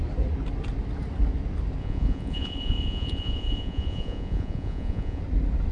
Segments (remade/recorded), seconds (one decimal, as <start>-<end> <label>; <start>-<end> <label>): 0.0-1.8 recorded; 1.8-5.2 remade; 5.2-5.7 recorded